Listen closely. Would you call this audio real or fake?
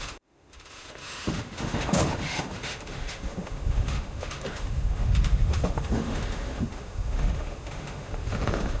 fake